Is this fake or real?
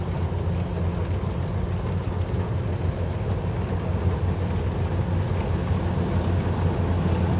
real